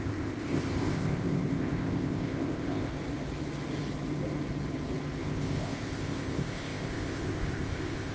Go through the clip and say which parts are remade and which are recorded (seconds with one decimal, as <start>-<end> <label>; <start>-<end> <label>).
0.0-2.9 remade; 2.9-5.2 recorded; 5.2-8.1 remade